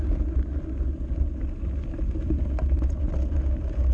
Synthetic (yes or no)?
no